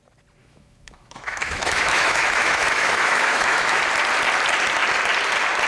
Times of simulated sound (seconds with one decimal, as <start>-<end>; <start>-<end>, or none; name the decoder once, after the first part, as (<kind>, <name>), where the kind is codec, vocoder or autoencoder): 0.4-3.8 (autoencoder, DAC-VAE)